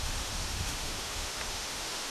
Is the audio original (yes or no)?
no